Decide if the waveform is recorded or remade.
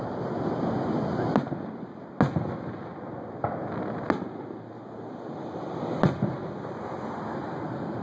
recorded